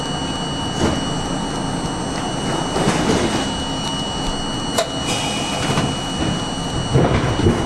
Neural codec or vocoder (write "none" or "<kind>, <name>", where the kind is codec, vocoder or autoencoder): none